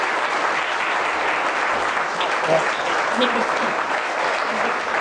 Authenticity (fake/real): real